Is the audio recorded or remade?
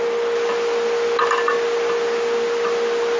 recorded